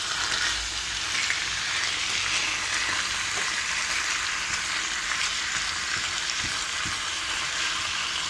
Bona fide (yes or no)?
yes